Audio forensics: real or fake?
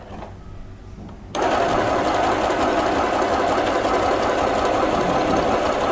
real